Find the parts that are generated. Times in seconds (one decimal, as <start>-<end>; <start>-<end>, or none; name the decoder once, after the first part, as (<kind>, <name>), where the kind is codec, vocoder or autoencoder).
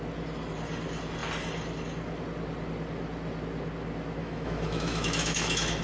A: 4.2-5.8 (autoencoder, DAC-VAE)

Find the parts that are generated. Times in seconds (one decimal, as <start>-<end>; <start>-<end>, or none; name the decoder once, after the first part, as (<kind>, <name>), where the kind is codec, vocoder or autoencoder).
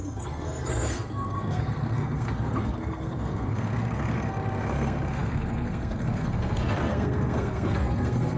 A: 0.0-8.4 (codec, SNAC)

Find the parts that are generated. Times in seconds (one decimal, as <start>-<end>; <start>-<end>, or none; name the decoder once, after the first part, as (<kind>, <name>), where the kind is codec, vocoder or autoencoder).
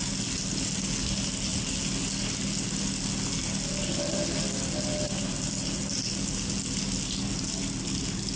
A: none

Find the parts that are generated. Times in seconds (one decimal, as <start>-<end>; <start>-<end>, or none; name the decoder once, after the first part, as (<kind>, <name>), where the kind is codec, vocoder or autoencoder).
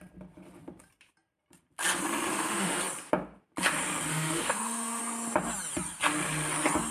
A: 2.3-2.8 (autoencoder, DAC-VAE); 4.1-5.0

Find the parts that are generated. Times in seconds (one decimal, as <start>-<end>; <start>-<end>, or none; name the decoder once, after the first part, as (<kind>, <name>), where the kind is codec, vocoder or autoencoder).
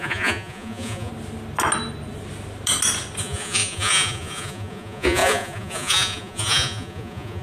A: 0.0-1.1 (vocoder, Vocos); 3.2-7.4